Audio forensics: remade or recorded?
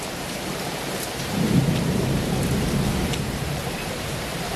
remade